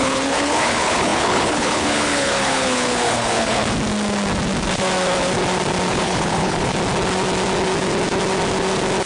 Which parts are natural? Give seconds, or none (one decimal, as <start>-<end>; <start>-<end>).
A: 3.6-5.9; 6.7-9.1

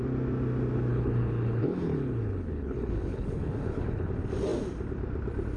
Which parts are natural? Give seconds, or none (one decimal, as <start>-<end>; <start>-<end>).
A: 0.0-0.9; 4.1-5.6